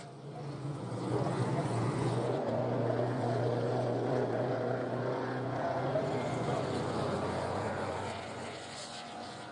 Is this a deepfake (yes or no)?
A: yes